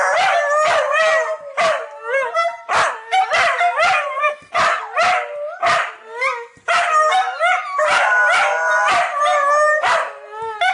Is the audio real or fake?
real